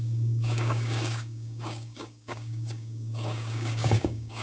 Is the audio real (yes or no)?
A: no